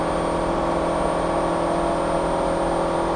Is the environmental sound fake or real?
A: real